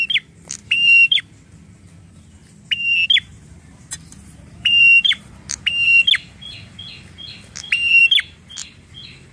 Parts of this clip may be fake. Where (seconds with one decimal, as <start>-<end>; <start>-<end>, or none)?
0.6-1.2; 3.3-5.2; 8.0-8.9